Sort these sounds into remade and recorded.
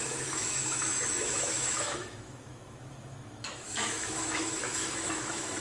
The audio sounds remade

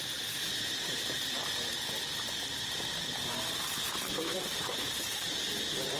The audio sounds recorded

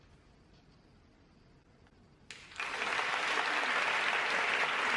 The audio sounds recorded